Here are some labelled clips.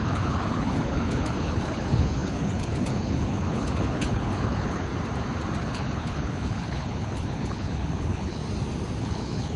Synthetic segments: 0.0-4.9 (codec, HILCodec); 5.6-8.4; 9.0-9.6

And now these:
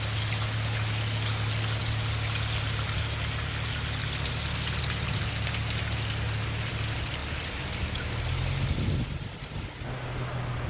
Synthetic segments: none

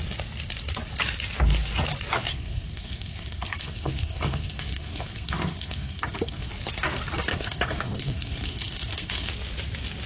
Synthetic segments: 2.3-6.5 (codec, SNAC); 7.3-9.3

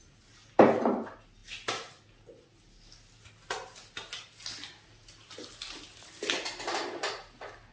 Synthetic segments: none

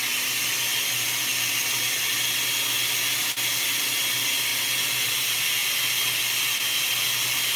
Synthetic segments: none

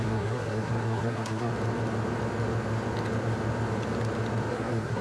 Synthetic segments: 0.0-1.5 (codec, SNAC); 4.5-5.0